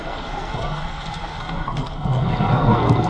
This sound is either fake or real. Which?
fake